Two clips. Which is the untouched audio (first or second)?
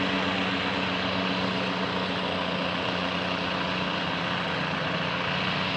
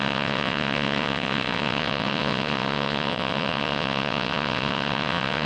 first